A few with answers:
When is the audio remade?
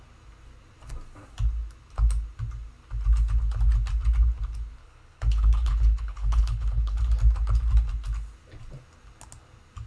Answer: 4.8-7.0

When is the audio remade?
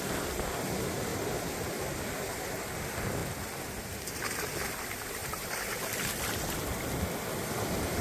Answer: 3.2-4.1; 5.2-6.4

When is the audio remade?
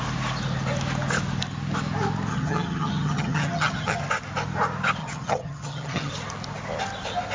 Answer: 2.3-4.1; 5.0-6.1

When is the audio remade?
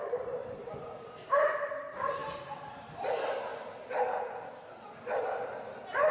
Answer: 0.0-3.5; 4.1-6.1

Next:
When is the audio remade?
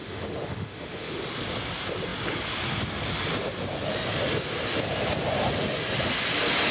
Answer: 0.0-1.1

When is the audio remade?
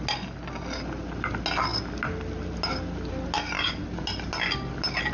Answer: none